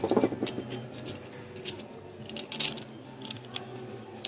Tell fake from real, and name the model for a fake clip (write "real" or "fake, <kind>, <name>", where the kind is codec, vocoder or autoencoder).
real